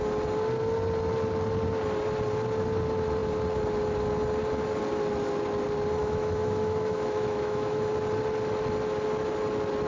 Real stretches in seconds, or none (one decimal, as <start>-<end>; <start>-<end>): 0.0-6.0; 7.9-9.9